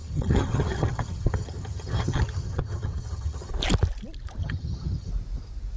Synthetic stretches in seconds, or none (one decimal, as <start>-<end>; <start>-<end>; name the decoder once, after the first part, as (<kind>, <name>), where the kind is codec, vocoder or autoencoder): 0.0-3.5 (vocoder, HiFi-GAN); 4.4-5.1